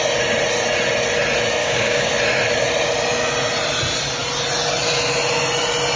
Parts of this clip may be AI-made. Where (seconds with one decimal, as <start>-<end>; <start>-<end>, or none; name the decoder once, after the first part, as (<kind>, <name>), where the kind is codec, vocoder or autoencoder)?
1.6-2.1 (codec, DAC)